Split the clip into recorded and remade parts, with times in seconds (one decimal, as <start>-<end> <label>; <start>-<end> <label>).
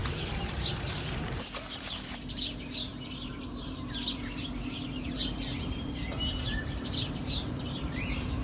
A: 0.0-8.4 remade